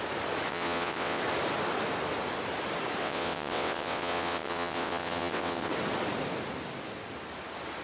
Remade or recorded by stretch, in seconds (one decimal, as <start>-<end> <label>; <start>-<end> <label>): 0.0-0.5 recorded; 0.5-1.2 remade; 1.2-3.0 recorded; 3.0-5.7 remade; 5.7-7.8 recorded